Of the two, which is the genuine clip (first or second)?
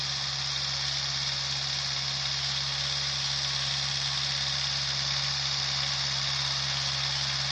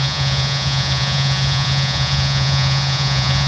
first